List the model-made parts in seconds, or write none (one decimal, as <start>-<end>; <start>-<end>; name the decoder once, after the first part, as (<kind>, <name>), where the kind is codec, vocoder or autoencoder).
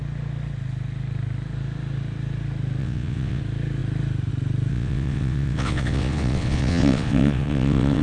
2.8-3.4 (vocoder, WaveNeXt); 4.7-8.0